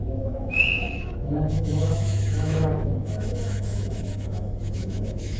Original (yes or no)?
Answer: no